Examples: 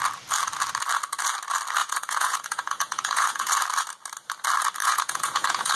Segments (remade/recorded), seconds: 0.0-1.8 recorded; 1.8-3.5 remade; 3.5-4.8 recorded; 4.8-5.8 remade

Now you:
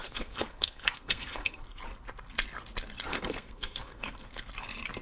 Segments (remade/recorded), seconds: 0.0-1.8 remade; 1.8-3.1 recorded; 3.1-4.5 remade; 4.5-5.0 recorded

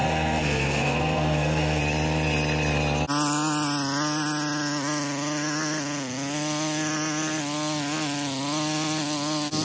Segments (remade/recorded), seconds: 0.0-1.8 remade; 1.8-9.6 recorded

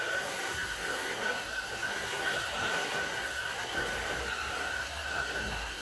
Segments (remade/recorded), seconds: 0.0-3.9 remade; 3.9-4.5 recorded; 4.5-5.8 remade

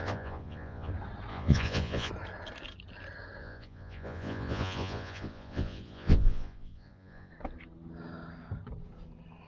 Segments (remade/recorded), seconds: 0.0-0.9 remade; 0.9-1.3 recorded; 1.3-2.1 remade; 2.1-3.4 recorded; 3.4-7.3 remade; 7.3-9.5 recorded

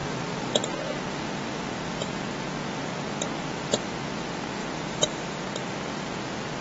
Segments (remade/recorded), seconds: 0.0-4.6 recorded; 4.6-5.4 remade; 5.4-6.6 recorded